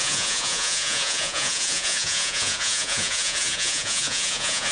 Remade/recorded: remade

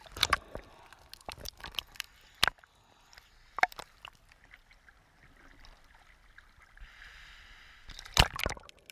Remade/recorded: recorded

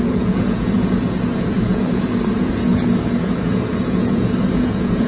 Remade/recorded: remade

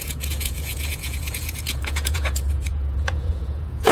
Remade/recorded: remade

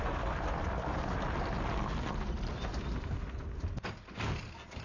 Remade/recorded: recorded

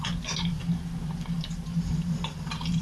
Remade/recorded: recorded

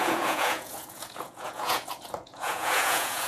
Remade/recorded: remade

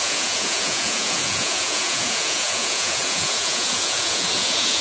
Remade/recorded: remade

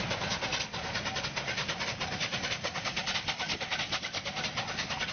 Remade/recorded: recorded